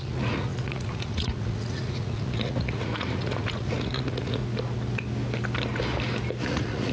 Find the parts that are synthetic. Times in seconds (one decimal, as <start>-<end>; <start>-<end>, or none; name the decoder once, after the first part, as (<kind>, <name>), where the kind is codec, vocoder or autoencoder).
0.0-4.4 (vocoder, Vocos); 6.4-6.9